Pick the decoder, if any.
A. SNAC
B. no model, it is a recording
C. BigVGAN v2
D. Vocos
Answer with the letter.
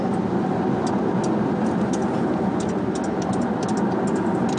B